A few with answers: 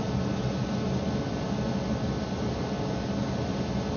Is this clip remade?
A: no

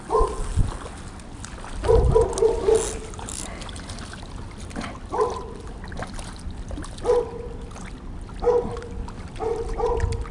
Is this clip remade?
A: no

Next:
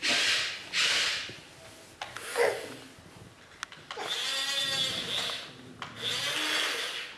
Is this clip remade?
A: no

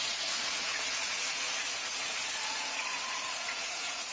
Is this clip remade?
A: yes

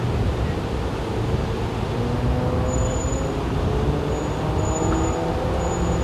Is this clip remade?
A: no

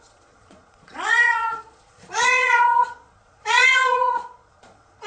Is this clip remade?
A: yes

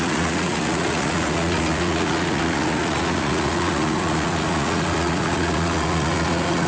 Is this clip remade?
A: yes